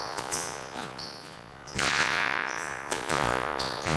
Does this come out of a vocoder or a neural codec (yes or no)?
yes